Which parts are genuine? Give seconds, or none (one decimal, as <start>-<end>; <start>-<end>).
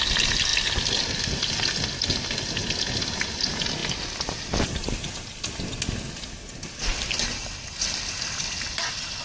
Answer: 0.0-9.2